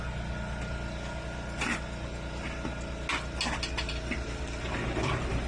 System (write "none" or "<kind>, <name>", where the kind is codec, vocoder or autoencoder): none